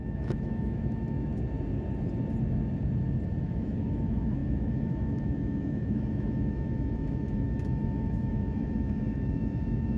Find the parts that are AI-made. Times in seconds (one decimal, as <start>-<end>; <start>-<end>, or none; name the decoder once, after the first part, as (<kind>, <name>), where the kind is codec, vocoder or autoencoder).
0.0-1.3 (autoencoder, DAC-VAE); 3.4-10.0